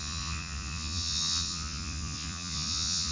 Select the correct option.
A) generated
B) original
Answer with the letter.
A